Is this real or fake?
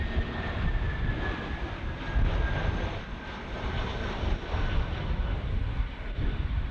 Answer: real